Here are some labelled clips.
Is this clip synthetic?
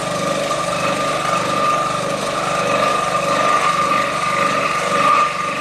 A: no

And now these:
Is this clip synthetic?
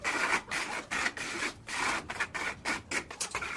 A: no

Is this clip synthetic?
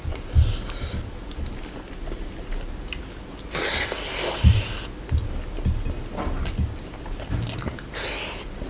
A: no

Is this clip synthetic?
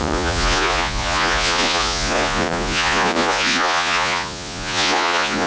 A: yes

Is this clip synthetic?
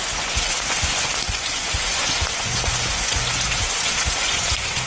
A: yes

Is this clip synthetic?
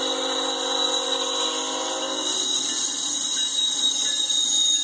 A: no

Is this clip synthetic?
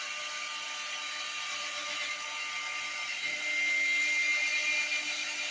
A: no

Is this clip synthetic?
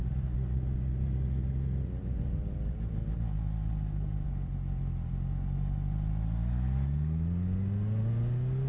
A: no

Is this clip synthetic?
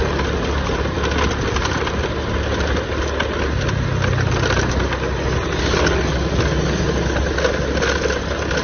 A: no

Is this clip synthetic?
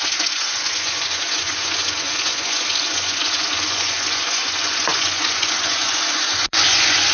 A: yes